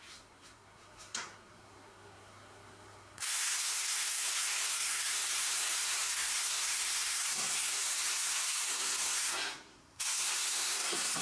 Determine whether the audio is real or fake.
fake